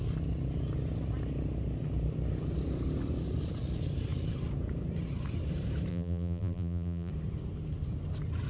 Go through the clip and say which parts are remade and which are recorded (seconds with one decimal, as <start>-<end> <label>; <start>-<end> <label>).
0.0-5.9 recorded; 5.9-7.1 remade; 7.1-8.5 recorded